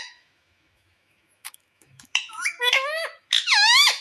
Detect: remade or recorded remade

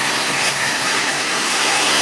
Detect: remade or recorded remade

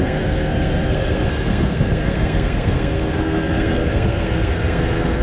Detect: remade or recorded remade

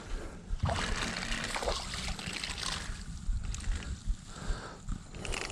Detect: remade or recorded recorded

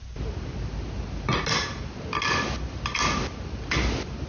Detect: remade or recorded recorded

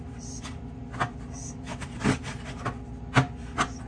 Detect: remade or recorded recorded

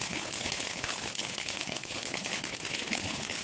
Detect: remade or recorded remade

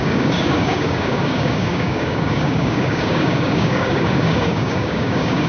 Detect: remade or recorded remade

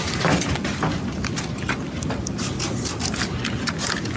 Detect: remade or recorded recorded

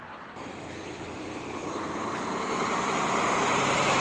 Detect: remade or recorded recorded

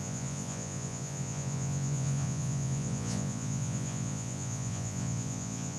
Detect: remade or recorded remade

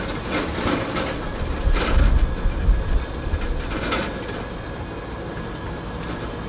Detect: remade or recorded recorded